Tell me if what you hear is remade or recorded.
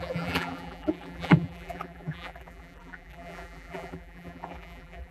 remade